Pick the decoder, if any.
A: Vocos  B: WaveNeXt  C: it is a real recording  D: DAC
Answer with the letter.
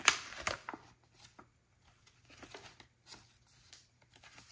C